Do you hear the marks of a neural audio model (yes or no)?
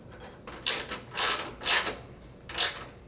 no